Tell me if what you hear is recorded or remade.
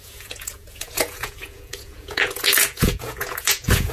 remade